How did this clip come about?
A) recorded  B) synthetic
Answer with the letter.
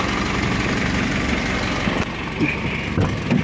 A